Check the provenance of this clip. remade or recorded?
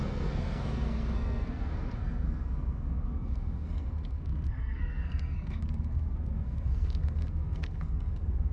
remade